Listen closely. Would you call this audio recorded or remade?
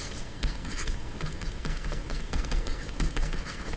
remade